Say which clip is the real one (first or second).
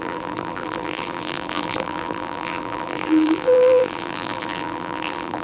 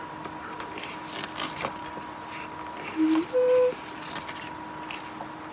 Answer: second